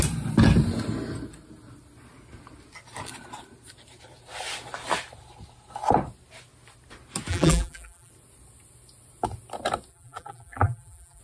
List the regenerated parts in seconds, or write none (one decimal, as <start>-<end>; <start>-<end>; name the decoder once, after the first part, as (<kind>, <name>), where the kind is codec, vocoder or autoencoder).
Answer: 7.3-8.1 (vocoder, BigVGAN v2); 9.9-11.2